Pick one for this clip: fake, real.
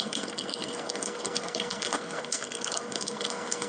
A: fake